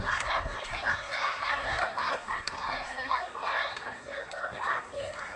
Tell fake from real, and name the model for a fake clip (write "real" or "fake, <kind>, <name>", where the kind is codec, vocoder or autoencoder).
fake, codec, SNAC